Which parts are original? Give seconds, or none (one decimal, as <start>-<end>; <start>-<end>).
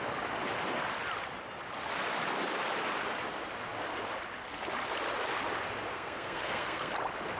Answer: 0.0-5.9; 6.9-7.4